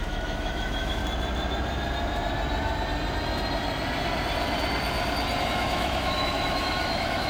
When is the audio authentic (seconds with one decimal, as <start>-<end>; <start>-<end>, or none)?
1.0-5.4